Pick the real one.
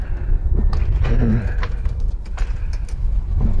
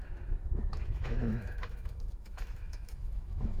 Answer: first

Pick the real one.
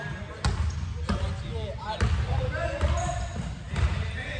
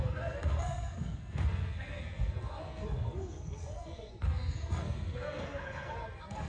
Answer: first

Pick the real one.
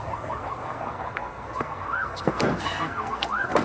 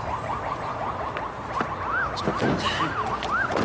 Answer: second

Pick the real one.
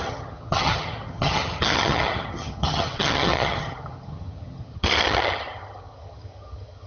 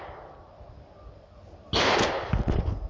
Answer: second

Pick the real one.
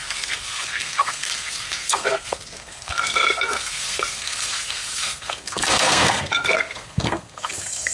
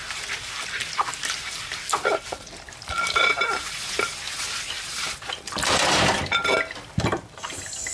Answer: second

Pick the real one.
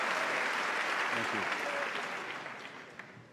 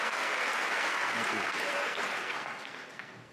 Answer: first